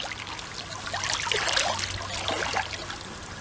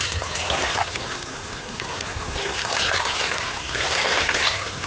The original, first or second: first